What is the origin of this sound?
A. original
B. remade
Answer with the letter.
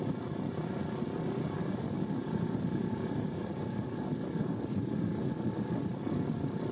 A